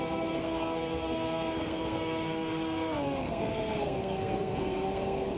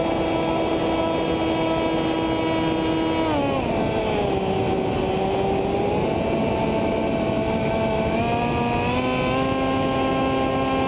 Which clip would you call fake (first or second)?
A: first